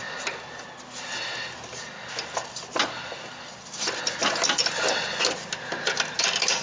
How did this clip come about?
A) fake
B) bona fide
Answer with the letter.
B